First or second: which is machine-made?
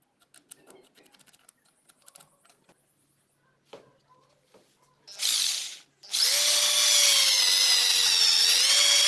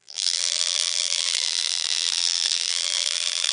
second